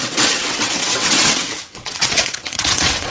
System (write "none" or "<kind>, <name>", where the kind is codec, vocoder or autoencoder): vocoder, WaveNeXt